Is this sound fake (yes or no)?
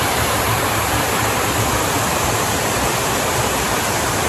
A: yes